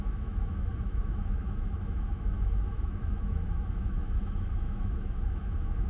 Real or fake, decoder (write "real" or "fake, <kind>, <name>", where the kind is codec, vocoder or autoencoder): fake, autoencoder, DAC-VAE